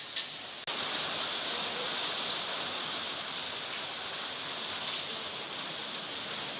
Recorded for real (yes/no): yes